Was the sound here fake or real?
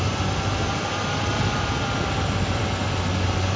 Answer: real